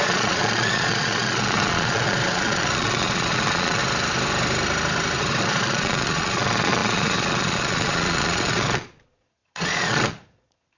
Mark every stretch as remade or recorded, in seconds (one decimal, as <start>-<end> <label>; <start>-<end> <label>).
0.0-3.8 remade; 3.8-5.4 recorded; 5.4-10.8 remade